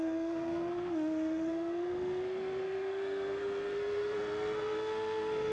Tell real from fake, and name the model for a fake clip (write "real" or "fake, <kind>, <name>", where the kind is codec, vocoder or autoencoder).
fake, codec, SNAC